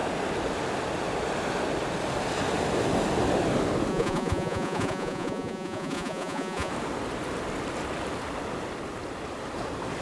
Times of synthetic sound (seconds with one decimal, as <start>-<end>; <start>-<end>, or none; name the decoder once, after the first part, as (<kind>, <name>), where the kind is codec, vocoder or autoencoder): 3.9-6.7 (vocoder, Vocos)